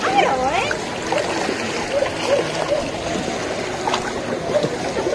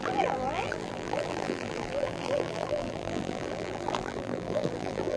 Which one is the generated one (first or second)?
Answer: second